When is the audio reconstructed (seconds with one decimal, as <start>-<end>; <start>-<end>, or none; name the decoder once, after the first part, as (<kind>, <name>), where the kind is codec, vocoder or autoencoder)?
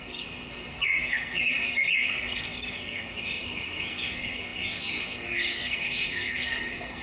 0.0-7.0 (codec, SNAC)